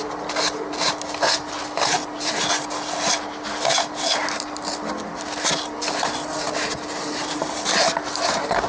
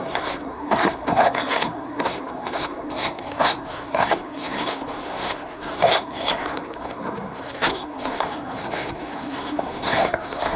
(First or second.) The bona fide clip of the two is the first